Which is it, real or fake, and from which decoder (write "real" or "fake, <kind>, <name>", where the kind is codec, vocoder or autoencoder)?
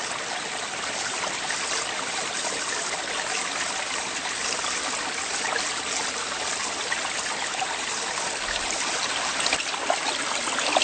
real